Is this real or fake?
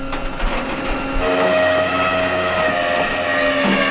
real